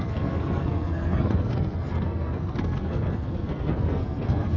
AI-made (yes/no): yes